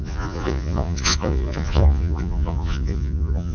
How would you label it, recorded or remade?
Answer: remade